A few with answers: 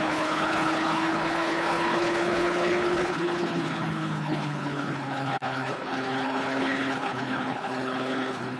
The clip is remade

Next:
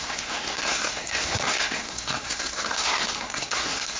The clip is remade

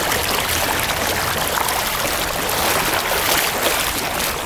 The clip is recorded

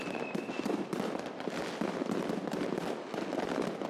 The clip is recorded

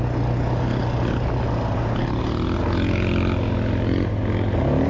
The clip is recorded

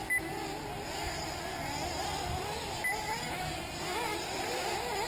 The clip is recorded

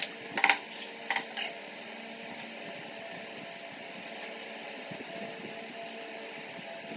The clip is recorded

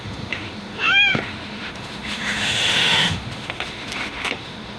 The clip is remade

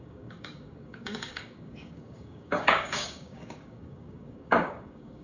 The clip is remade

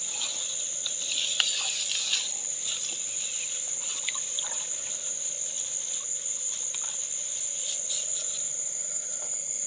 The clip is recorded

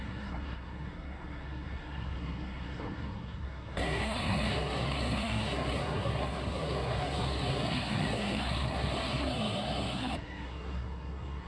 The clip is remade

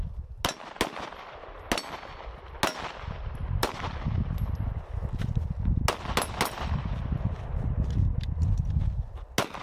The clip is recorded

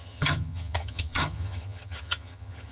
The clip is remade